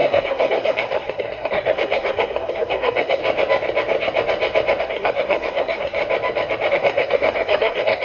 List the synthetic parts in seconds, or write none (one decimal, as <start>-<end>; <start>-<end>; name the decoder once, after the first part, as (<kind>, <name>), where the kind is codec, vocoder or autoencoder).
0.0-3.2 (codec, SNAC); 4.8-6.0; 6.7-8.0